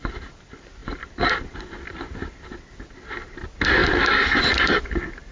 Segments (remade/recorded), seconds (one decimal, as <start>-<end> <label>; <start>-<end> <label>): 0.0-5.3 recorded